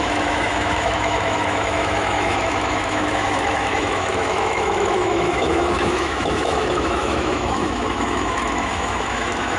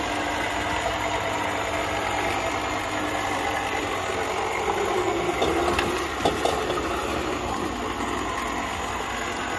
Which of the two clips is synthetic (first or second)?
first